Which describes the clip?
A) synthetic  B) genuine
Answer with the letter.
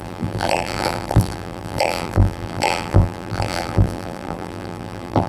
A